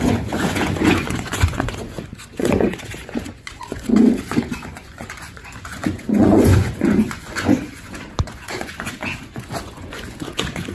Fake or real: fake